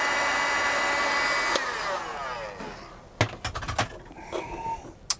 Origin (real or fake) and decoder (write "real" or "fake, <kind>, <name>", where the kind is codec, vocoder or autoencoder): real